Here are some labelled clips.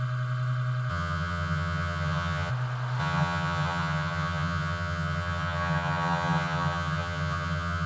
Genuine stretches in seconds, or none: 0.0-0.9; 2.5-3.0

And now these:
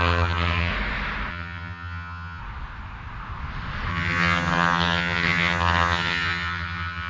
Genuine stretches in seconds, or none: 0.7-1.3; 2.4-3.9

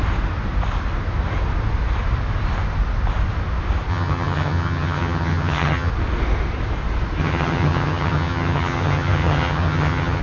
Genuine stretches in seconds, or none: 0.0-3.9; 5.9-7.2

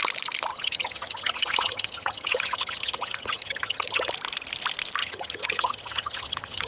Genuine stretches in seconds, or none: 0.0-0.5; 4.1-5.0

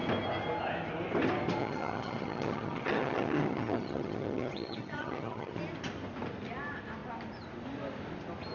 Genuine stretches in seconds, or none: 0.0-1.6; 5.6-8.5

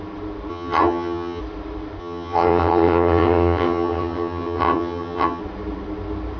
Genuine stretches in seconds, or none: 0.0-0.5; 1.4-2.0; 5.4-6.4

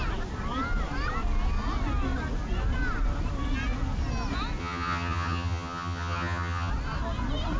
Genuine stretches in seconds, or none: 0.0-4.6; 6.7-7.6

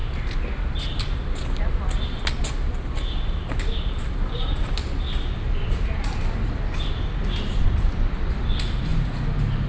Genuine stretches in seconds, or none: 0.0-9.7